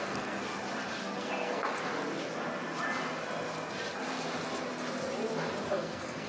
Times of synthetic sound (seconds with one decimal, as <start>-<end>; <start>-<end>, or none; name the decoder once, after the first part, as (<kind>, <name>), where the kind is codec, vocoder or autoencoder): 0.0-0.4 (codec, SNAC); 1.2-1.9; 5.7-6.3

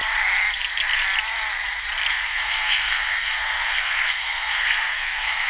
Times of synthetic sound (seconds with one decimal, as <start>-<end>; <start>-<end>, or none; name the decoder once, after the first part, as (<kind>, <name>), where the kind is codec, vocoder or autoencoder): 2.1-5.5 (codec, SNAC)

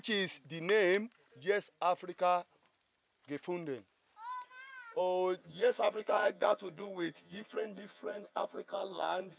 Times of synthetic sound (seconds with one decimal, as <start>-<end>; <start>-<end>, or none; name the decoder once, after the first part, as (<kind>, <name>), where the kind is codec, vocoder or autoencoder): 5.4-9.4 (vocoder, HiFi-GAN)

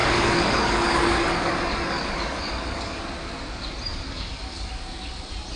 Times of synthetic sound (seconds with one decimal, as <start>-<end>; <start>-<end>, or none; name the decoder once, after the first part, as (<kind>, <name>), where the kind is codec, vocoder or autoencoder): 0.0-3.0 (codec, DAC); 3.9-4.7

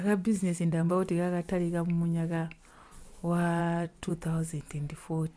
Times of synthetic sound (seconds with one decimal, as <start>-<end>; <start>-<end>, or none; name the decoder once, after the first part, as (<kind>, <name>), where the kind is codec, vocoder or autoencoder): 0.4-0.9 (vocoder, Vocos); 3.6-4.1

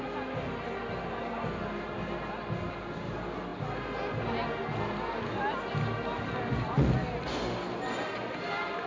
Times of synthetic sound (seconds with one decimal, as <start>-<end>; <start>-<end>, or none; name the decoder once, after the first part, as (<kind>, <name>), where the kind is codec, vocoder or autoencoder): none

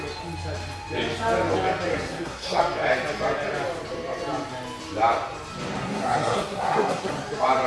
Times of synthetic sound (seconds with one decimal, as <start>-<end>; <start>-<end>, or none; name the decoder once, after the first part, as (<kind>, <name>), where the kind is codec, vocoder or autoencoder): 1.9-2.6 (codec, SNAC); 5.8-7.1

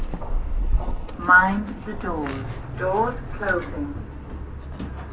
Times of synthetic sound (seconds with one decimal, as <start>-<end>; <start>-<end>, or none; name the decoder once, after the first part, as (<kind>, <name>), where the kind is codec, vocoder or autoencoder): 0.6-1.1 (codec, HILCodec)